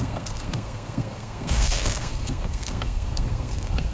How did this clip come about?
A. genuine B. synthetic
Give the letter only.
B